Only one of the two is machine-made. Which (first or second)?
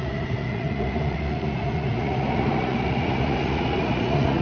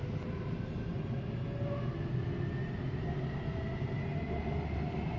first